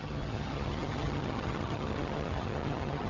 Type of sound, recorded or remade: remade